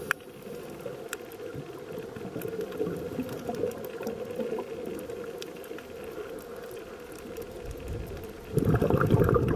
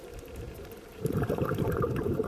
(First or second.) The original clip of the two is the first